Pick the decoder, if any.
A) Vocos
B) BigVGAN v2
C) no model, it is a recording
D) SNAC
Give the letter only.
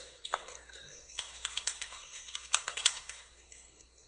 D